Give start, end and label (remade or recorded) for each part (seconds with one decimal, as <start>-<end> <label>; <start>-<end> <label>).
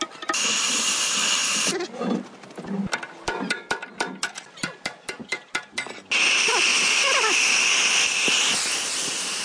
0.0-9.4 recorded